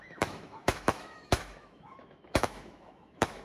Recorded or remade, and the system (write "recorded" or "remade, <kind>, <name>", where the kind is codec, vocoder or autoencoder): remade, autoencoder, DAC-VAE